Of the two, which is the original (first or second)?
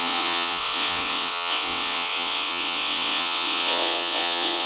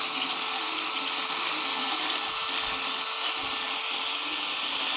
second